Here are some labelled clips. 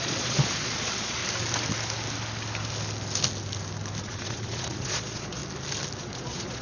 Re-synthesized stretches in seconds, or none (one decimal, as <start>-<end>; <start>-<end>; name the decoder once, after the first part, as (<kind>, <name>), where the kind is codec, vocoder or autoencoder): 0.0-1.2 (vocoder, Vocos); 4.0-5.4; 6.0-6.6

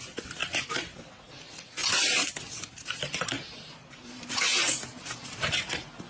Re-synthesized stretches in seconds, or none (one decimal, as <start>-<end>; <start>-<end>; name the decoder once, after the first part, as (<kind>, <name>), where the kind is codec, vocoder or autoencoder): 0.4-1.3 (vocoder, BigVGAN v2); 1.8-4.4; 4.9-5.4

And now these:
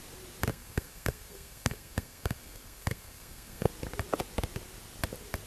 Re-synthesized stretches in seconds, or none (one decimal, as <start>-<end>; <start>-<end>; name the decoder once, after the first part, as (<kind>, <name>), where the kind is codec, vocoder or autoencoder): 0.5-3.7 (codec, SNAC)